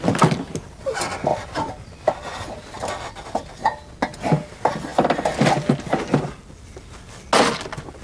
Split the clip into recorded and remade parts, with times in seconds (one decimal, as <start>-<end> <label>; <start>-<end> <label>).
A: 0.0-8.0 recorded